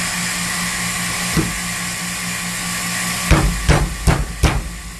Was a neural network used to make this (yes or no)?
no